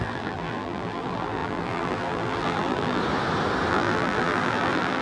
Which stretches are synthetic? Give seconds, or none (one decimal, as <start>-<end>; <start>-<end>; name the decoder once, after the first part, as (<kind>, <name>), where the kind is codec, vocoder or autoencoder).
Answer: 0.0-3.0 (vocoder, BigVGAN v2); 3.7-5.0